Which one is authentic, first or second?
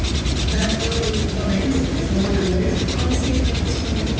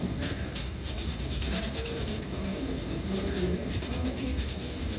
first